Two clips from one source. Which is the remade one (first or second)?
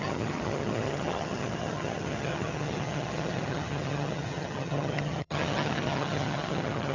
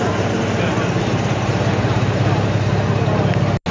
first